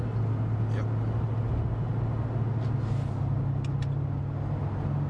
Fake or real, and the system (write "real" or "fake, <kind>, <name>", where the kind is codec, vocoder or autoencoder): real